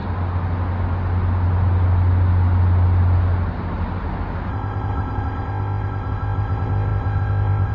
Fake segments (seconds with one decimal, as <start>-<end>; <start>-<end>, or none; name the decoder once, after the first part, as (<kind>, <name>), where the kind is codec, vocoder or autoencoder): 4.5-7.7 (codec, ZipCodec)